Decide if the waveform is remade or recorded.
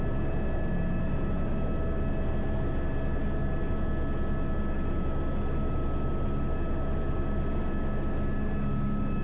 recorded